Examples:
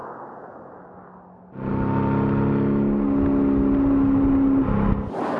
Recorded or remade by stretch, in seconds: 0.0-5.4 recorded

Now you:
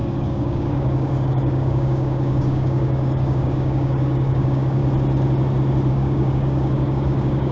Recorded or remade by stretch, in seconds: 0.0-4.8 remade; 4.8-5.9 recorded; 5.9-7.5 remade

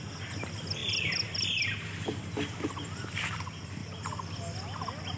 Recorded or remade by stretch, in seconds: 0.0-0.8 recorded; 0.8-1.6 remade; 1.6-3.8 recorded; 3.8-5.2 remade

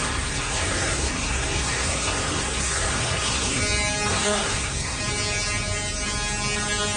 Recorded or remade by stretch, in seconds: 0.0-3.6 remade; 3.6-4.1 recorded; 4.1-5.0 remade; 5.0-7.0 recorded

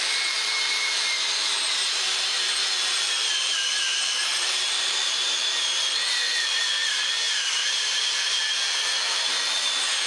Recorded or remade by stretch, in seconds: 0.0-10.1 remade

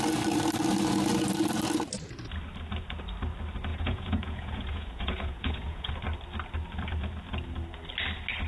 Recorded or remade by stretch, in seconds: 0.0-3.7 recorded; 3.7-5.9 remade; 5.9-8.5 recorded